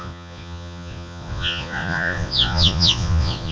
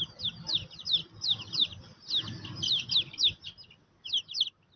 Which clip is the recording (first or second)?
second